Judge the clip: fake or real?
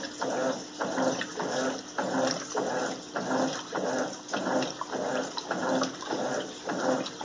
real